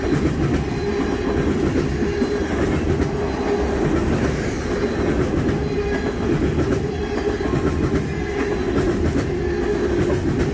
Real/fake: real